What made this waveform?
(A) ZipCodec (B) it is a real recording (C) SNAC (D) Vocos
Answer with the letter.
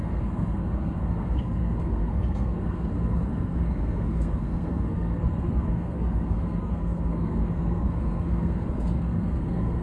C